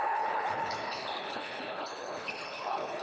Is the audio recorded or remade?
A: remade